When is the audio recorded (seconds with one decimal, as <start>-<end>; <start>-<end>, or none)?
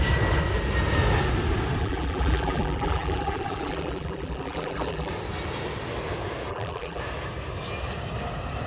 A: 0.0-1.8; 5.1-6.5; 7.0-8.7